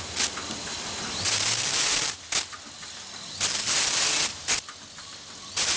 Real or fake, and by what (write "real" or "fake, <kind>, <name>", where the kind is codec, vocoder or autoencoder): real